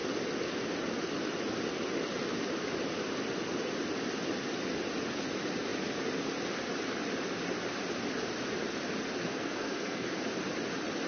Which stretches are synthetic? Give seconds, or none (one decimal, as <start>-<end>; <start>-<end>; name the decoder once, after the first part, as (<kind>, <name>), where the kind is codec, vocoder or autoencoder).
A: 9.2-10.1 (codec, SNAC)